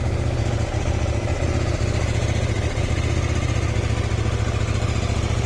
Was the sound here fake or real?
real